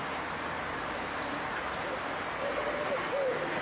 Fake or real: real